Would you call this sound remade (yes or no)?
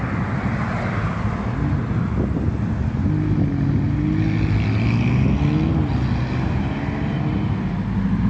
no